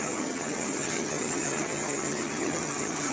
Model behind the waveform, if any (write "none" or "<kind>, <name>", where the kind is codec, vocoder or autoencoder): vocoder, HiFi-GAN